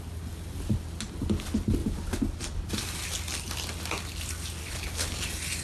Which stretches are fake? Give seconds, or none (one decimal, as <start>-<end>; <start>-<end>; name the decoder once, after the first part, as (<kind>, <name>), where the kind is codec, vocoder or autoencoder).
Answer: 4.6-5.1 (codec, HILCodec)